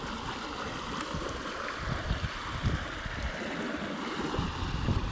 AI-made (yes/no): no